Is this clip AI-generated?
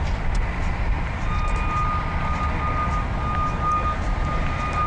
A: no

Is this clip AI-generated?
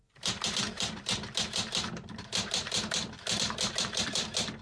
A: yes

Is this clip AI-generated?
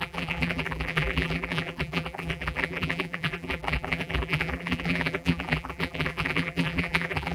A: yes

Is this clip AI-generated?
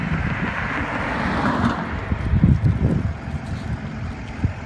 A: no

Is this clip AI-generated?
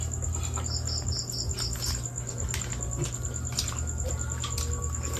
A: no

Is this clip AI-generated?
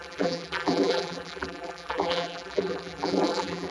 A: yes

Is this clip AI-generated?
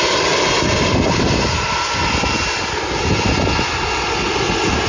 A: no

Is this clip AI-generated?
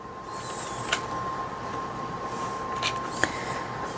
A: yes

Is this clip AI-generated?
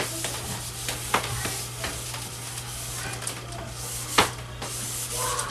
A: no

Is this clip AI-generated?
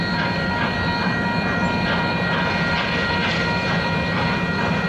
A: no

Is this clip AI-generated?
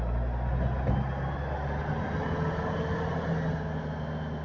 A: no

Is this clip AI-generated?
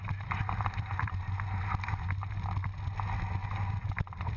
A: no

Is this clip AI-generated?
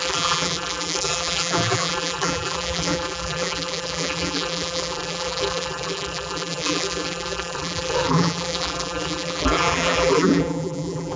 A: yes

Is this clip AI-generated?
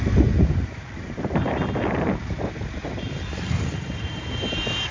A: yes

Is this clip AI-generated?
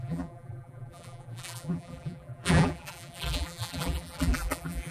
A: yes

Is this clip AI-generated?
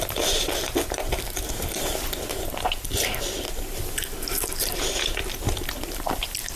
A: yes